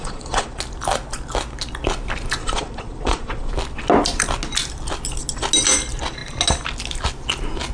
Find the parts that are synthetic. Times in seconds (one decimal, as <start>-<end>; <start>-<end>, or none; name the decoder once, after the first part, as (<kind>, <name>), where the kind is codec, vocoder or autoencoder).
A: 0.0-0.6 (vocoder, Vocos); 2.4-3.5